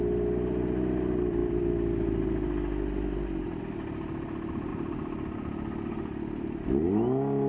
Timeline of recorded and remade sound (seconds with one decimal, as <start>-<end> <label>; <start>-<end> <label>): 0.0-4.7 recorded; 4.7-6.7 remade; 6.7-7.5 recorded